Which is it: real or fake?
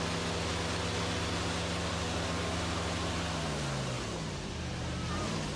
real